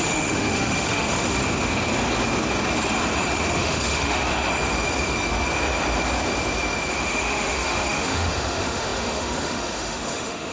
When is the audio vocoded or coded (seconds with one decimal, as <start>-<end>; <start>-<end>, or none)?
0.0-1.4; 3.5-4.3; 6.9-10.5